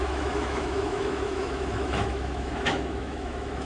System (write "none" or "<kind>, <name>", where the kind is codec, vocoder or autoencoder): autoencoder, DAC-VAE